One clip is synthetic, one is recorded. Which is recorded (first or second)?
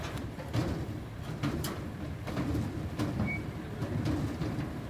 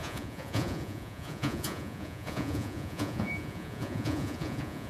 first